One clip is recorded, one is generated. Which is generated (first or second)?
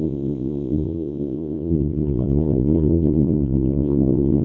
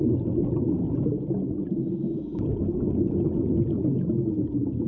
first